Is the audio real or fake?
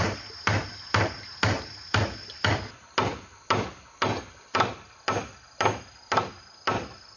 real